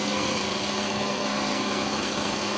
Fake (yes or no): yes